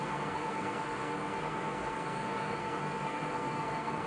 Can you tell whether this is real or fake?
fake